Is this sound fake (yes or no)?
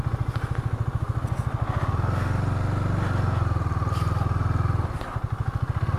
no